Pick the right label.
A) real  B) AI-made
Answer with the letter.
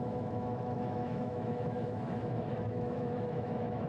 B